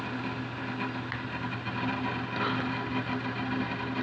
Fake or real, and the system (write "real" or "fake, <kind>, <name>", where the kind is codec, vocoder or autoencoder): real